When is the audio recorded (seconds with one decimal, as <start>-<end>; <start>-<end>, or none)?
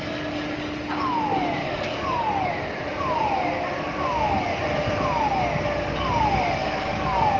0.0-1.6; 2.5-6.6